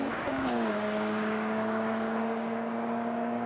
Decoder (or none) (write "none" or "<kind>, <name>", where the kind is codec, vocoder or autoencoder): codec, DAC